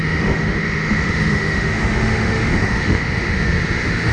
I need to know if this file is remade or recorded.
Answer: remade